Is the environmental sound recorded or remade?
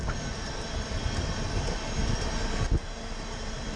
recorded